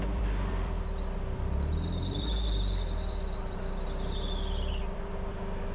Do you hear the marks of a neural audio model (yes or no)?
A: yes